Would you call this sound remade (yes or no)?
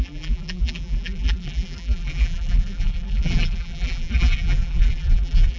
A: yes